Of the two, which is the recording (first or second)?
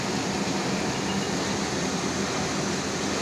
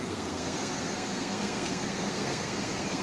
first